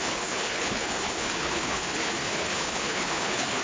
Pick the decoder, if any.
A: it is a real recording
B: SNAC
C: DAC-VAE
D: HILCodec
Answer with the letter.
D